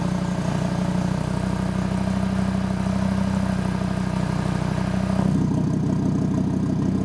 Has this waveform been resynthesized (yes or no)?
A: no